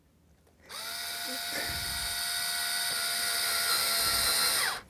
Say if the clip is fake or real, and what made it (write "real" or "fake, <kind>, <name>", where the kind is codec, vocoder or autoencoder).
real